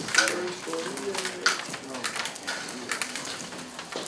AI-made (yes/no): no